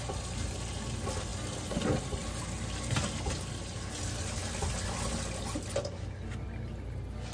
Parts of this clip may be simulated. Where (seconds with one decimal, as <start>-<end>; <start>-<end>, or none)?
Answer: none